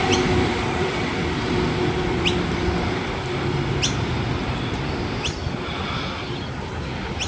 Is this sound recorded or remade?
recorded